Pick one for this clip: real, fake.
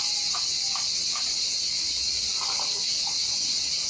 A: real